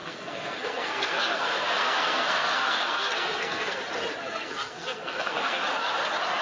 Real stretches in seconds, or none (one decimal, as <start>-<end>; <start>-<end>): 3.8-4.2; 5.6-6.4